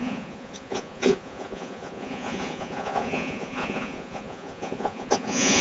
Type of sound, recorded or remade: remade